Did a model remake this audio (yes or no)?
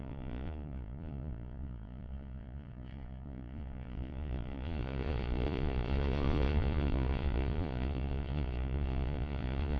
yes